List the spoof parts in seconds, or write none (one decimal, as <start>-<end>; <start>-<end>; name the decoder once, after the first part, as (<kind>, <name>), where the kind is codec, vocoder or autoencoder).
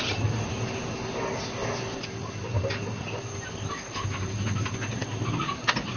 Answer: none